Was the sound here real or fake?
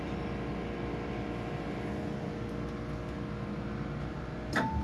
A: real